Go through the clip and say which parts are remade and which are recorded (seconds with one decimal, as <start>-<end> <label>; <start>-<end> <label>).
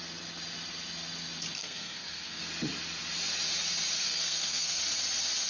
0.0-1.6 recorded; 1.6-2.4 remade; 2.4-4.0 recorded; 4.0-4.8 remade; 4.8-5.5 recorded